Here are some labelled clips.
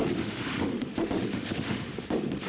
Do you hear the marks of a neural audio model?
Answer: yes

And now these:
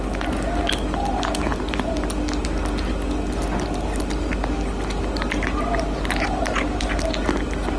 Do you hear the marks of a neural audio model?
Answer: no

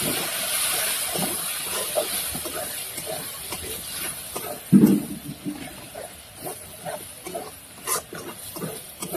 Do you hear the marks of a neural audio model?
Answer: no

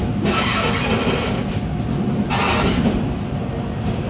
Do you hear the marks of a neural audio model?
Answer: no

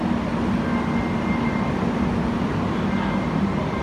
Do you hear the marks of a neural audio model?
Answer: no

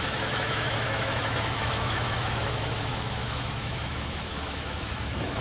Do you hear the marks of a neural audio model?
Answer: yes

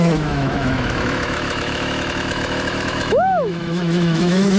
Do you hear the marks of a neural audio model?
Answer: yes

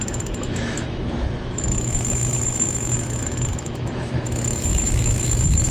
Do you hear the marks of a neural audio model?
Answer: yes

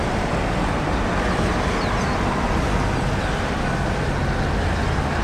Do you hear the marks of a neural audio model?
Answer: no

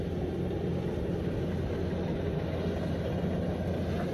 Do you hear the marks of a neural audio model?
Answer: no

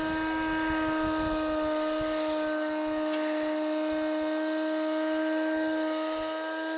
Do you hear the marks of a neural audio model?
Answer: no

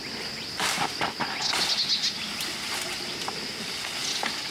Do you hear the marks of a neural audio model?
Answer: no